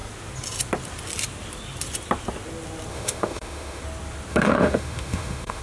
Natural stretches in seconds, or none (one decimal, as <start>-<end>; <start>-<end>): 0.0-2.9; 3.8-4.3